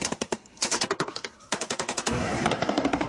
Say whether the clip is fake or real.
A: fake